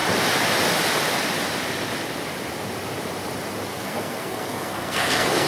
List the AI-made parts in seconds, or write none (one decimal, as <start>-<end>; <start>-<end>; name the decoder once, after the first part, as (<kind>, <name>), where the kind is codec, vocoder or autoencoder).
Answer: 3.7-5.5 (codec, SNAC)

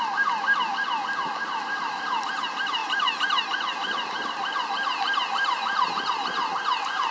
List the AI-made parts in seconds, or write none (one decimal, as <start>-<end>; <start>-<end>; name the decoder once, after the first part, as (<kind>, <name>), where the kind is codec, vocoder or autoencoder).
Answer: none

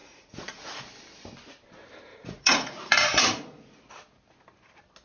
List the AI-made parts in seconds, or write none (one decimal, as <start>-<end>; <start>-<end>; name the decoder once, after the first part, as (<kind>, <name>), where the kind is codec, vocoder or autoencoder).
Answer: 0.0-0.8 (vocoder, Vocos); 2.1-3.8

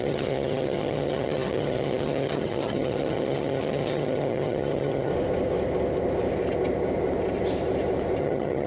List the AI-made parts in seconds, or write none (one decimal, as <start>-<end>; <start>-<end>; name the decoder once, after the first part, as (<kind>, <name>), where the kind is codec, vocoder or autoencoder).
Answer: 0.0-5.1 (vocoder, HiFi-GAN); 8.2-8.7

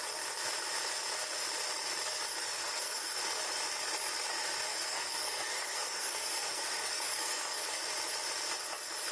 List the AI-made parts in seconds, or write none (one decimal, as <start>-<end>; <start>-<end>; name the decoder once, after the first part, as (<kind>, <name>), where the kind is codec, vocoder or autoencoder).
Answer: 2.4-3.2 (codec, SNAC); 4.7-7.8

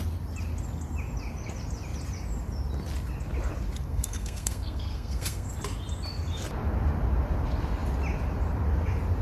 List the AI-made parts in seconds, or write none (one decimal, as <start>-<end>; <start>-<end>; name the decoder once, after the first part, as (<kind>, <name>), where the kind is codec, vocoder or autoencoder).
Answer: 3.9-5.5 (codec, SNAC)